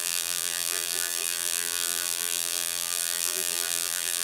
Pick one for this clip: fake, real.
fake